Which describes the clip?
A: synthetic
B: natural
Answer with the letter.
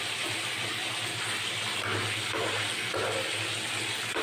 B